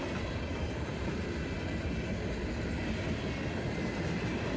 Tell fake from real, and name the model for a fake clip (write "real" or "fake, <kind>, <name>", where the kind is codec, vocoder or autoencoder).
real